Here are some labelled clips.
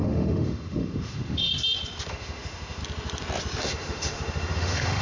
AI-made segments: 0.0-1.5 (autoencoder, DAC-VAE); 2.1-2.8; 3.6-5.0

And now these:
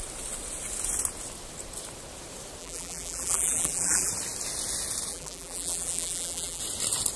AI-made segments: 2.6-4.1 (vocoder, BigVGAN v2); 5.1-6.6

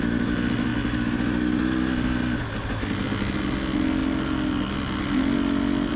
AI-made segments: none